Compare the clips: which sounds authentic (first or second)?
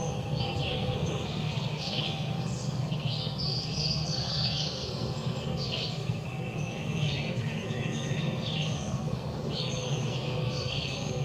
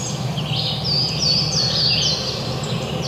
second